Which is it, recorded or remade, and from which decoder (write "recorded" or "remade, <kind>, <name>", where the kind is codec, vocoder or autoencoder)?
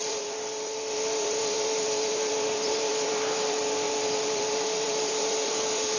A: remade, vocoder, BigVGAN v2